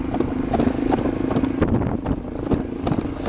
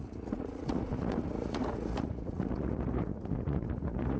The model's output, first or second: second